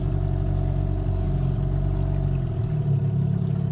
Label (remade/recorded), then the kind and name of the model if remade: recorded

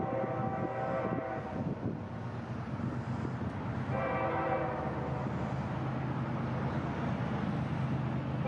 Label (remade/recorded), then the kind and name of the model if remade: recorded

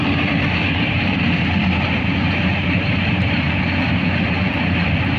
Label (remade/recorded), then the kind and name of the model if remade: remade, vocoder, BigVGAN v2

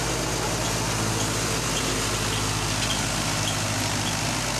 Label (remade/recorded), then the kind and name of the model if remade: recorded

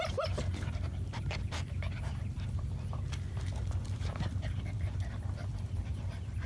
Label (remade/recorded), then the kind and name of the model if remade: remade, vocoder, BigVGAN v2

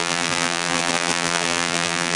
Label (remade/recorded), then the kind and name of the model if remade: remade, vocoder, BigVGAN v2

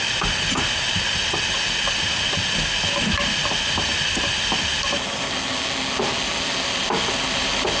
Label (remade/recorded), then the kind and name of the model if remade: recorded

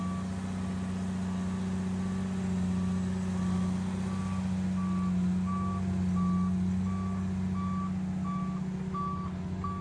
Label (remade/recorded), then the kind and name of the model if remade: recorded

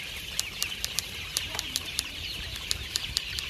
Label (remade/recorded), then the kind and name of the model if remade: remade, vocoder, BigVGAN v2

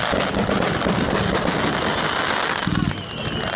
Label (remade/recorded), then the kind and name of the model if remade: recorded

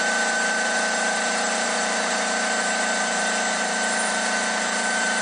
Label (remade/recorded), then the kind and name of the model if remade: remade, vocoder, BigVGAN v2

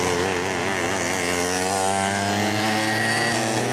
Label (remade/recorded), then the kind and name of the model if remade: recorded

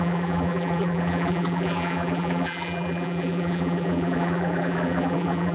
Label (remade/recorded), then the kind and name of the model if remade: remade, vocoder, BigVGAN v2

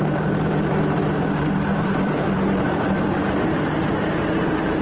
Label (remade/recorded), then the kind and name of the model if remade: remade, vocoder, BigVGAN v2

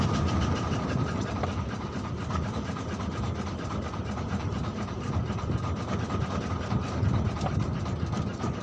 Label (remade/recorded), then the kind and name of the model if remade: remade, vocoder, BigVGAN v2